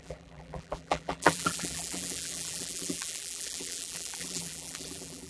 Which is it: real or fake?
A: fake